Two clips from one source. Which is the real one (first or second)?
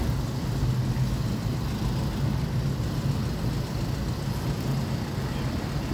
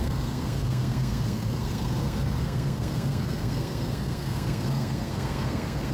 first